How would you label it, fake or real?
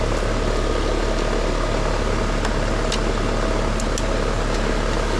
real